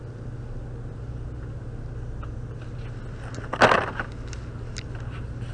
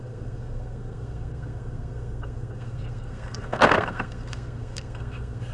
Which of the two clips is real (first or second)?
first